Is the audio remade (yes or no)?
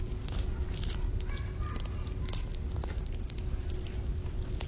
no